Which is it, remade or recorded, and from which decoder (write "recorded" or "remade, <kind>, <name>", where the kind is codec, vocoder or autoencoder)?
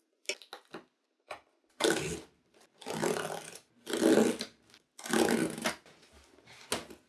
recorded